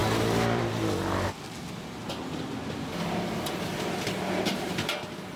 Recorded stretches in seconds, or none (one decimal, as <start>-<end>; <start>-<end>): 0.0-5.4